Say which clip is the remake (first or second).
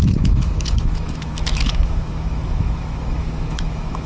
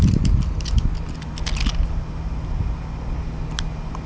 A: first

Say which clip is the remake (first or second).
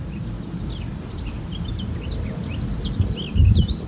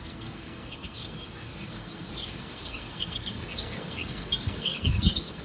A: second